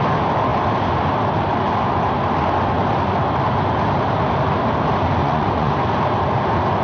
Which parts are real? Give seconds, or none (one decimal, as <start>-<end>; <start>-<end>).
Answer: 0.0-5.2; 5.7-6.8